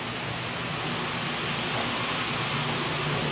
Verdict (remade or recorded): recorded